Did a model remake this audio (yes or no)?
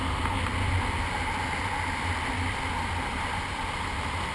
no